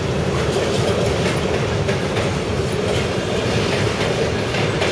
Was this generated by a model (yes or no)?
no